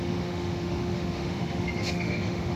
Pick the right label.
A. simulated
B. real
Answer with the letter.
A